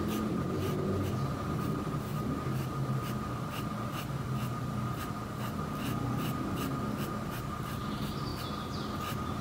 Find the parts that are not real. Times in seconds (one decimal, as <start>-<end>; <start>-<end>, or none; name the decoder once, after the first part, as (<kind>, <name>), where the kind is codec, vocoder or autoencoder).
none